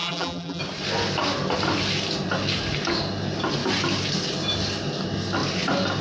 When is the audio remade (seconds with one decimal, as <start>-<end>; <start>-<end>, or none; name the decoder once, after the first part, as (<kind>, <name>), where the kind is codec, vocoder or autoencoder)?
0.0-0.6 (vocoder, BigVGAN v2)

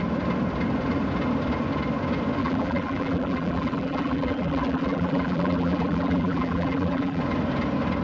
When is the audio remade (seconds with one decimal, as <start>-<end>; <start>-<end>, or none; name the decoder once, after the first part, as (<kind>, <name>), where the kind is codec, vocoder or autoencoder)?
2.4-7.2 (vocoder, BigVGAN v2)

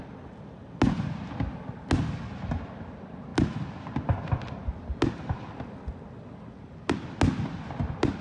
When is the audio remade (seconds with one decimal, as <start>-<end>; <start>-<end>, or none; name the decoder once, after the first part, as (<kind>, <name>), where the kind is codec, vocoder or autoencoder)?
none

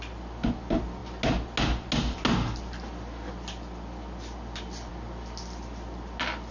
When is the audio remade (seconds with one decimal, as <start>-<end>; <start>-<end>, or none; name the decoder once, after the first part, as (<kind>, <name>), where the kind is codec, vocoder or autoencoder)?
none

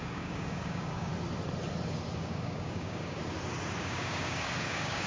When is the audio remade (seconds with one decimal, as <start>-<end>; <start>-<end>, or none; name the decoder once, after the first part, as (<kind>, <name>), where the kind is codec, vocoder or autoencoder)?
0.0-1.1 (codec, DAC); 2.2-3.2; 3.8-5.1

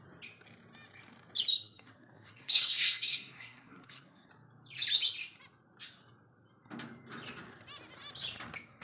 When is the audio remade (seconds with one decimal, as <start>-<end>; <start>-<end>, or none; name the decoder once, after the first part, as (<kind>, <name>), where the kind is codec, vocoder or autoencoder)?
1.5-4.3 (codec, SNAC)